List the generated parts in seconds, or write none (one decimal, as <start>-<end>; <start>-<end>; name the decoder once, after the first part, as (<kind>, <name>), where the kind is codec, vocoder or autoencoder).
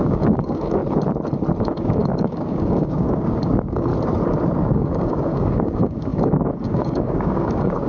0.0-0.8 (codec, DAC); 1.6-3.9; 4.6-7.9